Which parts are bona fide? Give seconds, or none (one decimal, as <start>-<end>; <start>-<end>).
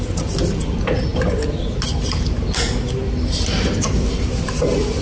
0.0-5.0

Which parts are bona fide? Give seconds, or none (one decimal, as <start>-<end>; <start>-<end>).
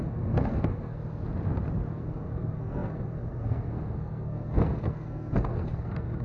1.0-1.9